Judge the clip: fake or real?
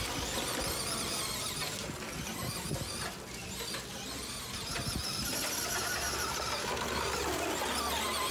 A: real